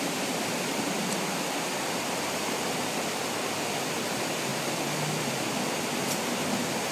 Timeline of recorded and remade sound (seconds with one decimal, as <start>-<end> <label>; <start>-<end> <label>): 0.0-6.9 recorded

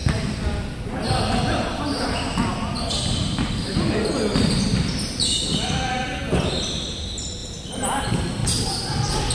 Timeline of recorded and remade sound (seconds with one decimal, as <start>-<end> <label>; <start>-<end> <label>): 0.0-4.3 recorded; 4.3-5.3 remade; 5.3-7.4 recorded; 7.4-8.0 remade; 8.0-9.3 recorded

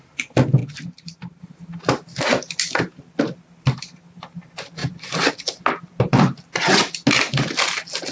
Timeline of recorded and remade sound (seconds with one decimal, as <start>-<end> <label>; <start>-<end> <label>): 0.0-0.6 recorded; 0.6-1.4 remade; 1.4-4.8 recorded; 4.8-5.3 remade; 5.3-8.1 recorded

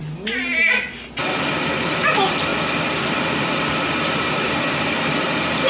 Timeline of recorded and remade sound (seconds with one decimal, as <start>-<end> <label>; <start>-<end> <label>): 0.0-1.2 recorded; 1.2-2.5 remade; 2.5-4.2 recorded; 4.2-5.7 remade

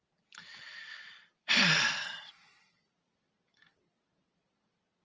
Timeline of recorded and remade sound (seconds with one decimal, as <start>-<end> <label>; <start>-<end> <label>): 0.0-0.7 recorded; 0.7-3.3 remade; 3.3-5.0 recorded

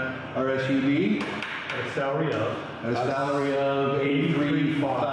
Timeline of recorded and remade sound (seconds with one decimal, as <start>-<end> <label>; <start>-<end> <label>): 0.0-3.2 recorded; 3.2-4.5 remade; 4.5-5.1 recorded

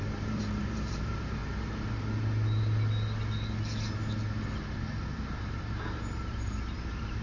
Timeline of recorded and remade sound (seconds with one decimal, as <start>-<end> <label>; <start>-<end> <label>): 0.0-1.4 remade; 1.4-5.1 recorded; 5.1-7.2 remade